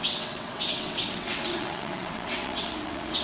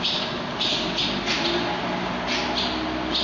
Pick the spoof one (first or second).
first